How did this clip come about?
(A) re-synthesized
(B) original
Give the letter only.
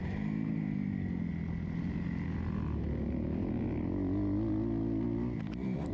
B